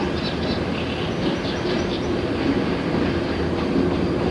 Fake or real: real